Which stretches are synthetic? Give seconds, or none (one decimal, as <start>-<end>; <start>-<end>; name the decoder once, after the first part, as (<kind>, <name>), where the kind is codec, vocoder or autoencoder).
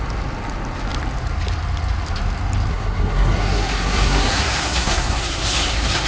2.7-6.1 (codec, SNAC)